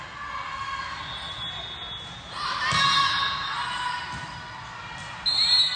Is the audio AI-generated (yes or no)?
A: no